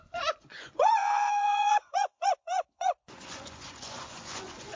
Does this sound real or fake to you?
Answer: fake